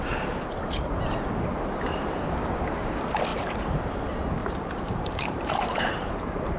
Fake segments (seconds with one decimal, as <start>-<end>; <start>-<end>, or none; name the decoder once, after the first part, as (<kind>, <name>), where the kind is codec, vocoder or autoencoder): 3.3-3.8 (vocoder, BigVGAN v2); 4.4-6.6